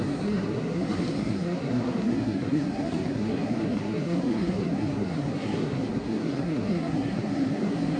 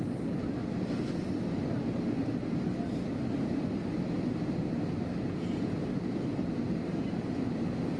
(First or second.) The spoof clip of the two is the first